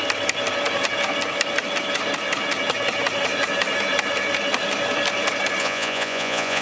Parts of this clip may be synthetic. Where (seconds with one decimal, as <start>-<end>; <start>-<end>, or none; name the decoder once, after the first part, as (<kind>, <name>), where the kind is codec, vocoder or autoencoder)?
5.6-6.6 (vocoder, Vocos)